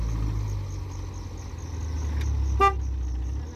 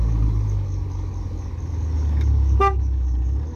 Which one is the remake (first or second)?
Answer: second